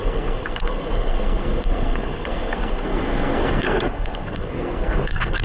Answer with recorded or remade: remade